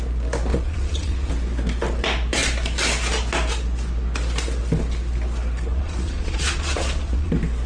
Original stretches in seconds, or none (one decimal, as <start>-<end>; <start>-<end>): 0.0-0.5; 1.3-5.7; 7.3-7.7